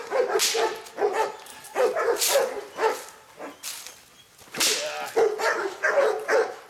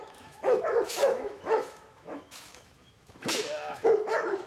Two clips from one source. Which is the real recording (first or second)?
first